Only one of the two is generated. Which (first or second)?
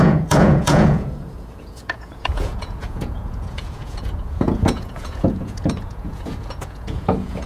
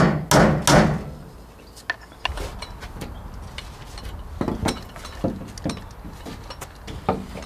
first